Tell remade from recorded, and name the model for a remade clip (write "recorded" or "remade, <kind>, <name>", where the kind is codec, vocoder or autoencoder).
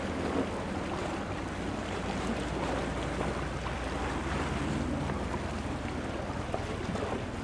recorded